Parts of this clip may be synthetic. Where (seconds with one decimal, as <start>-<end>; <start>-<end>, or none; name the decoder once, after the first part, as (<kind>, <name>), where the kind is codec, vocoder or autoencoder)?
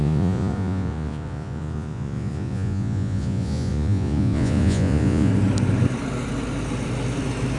0.0-5.3 (vocoder, Vocos)